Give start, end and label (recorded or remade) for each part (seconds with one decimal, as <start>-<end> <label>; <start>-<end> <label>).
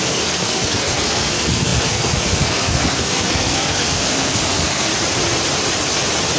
0.0-4.9 remade; 4.9-6.4 recorded